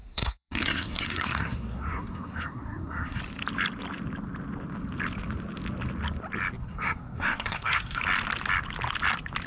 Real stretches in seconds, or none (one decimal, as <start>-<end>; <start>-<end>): 3.2-6.6; 8.0-9.5